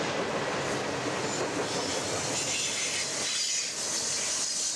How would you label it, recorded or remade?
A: recorded